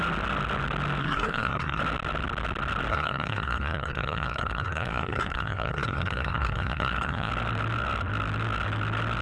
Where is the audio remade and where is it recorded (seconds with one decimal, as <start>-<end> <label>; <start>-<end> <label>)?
0.0-1.0 recorded; 1.0-1.8 remade; 1.8-2.9 recorded; 2.9-7.3 remade; 7.3-9.2 recorded